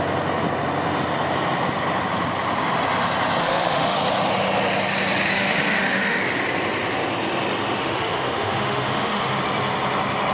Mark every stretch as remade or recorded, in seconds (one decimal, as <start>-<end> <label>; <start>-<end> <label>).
0.0-3.4 recorded; 3.4-4.0 remade; 4.0-5.3 recorded; 5.3-6.2 remade; 6.2-7.8 recorded; 7.8-9.4 remade; 9.4-10.3 recorded